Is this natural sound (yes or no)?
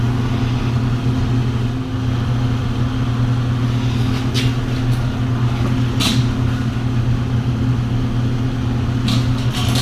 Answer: yes